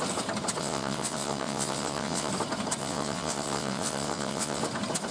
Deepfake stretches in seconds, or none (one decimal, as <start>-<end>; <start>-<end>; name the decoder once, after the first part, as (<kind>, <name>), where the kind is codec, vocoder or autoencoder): 0.6-2.3 (vocoder, WaveNeXt); 2.8-4.6